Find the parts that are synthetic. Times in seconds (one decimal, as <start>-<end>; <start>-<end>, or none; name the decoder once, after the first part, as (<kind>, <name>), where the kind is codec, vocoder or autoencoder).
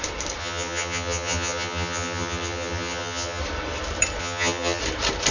0.4-3.4 (vocoder, HiFi-GAN); 4.2-4.8